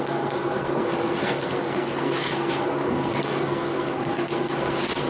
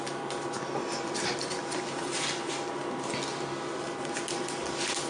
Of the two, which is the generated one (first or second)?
first